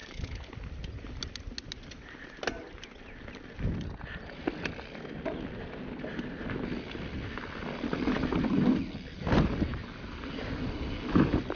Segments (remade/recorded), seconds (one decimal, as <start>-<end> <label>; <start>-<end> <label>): 0.0-0.5 remade; 0.5-11.6 recorded